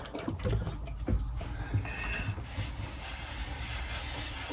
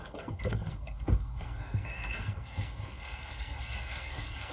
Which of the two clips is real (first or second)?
first